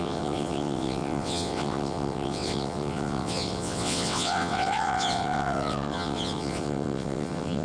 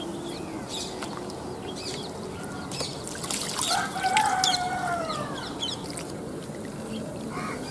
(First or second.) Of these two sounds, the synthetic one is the first